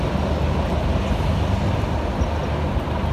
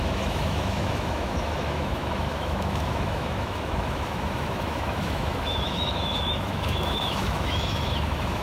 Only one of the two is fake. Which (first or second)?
second